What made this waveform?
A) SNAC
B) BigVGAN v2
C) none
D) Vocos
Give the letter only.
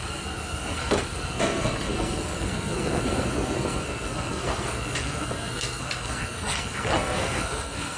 A